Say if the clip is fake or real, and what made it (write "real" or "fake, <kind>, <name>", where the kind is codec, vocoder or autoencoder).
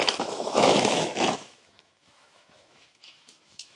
fake, autoencoder, DAC-VAE